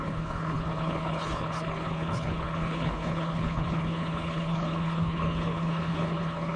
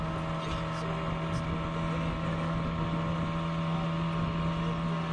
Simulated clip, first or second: first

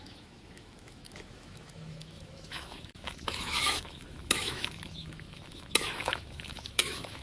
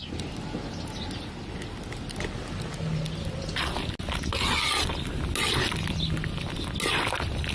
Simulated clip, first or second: first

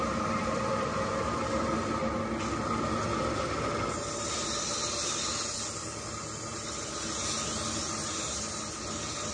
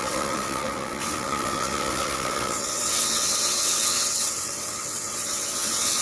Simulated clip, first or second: second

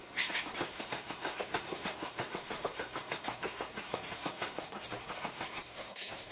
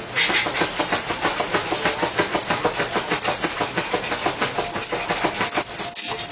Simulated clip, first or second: first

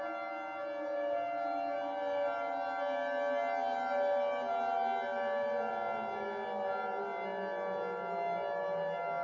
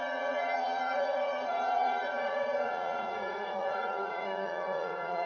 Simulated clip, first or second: second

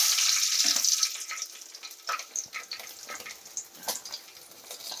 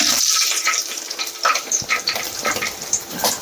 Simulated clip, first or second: second